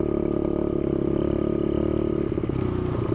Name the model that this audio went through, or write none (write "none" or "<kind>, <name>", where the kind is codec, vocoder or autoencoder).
none